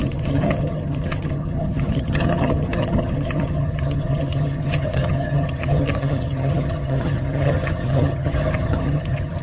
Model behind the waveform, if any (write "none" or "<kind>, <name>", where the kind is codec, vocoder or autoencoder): vocoder, HiFi-GAN